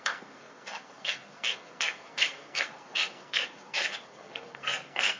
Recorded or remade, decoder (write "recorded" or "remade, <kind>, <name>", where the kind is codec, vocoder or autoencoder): remade, codec, SNAC